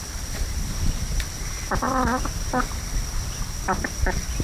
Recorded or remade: remade